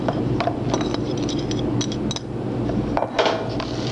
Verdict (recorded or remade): recorded